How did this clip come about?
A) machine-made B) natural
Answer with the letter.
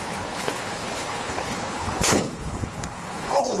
A